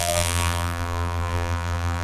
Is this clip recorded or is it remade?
remade